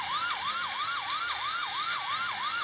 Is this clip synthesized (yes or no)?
no